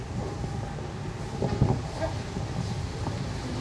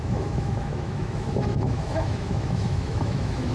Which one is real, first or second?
first